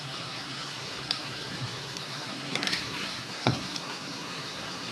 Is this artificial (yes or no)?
yes